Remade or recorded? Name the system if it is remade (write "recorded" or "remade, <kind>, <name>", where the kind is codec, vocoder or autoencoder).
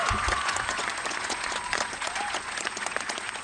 remade, vocoder, Vocos